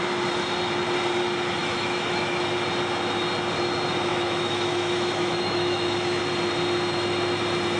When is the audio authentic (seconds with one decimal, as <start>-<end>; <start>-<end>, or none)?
0.0-1.6; 2.4-4.1; 6.2-7.8